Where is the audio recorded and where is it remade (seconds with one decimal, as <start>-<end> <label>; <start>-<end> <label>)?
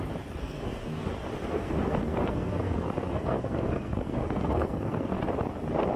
0.0-0.4 recorded; 0.4-1.1 remade; 1.1-1.5 recorded; 1.5-5.1 remade; 5.1-6.0 recorded